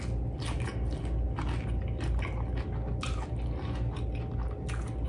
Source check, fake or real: real